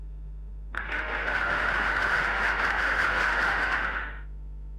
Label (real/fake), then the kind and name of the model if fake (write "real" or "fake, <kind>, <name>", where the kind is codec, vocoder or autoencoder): fake, autoencoder, DAC-VAE